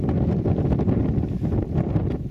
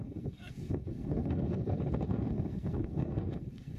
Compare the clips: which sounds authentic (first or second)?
first